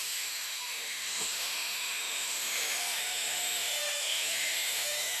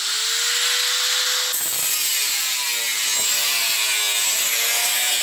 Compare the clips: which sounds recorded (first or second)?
second